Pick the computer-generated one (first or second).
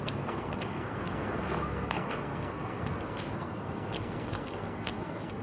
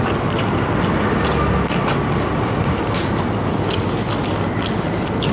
first